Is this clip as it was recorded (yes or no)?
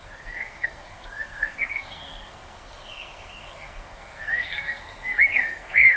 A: no